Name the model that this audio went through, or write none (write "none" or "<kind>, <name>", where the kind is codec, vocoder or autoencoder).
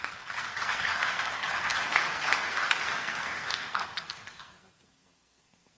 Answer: codec, SNAC